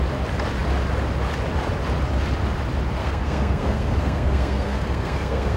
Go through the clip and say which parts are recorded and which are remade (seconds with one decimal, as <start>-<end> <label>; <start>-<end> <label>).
0.0-3.0 recorded; 3.0-5.6 remade